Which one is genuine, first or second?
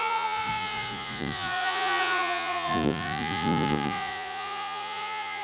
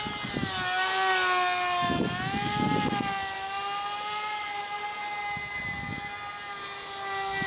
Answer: second